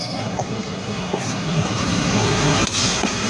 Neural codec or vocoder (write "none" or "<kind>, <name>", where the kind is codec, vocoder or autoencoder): codec, SNAC